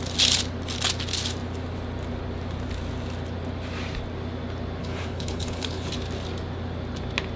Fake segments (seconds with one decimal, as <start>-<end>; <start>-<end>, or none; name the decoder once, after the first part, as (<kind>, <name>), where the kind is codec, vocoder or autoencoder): 4.8-5.9 (codec, HILCodec)